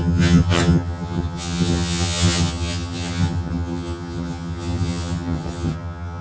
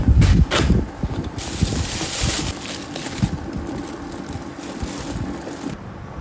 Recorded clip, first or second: second